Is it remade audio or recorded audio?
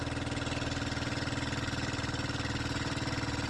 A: recorded